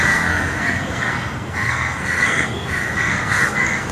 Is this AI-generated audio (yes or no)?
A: yes